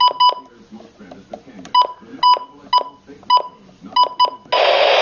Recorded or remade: recorded